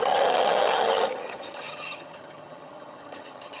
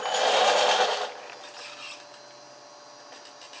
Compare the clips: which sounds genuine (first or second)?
second